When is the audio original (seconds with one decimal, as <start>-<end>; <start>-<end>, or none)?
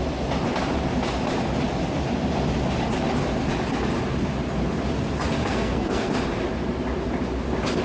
0.0-5.4; 6.1-7.8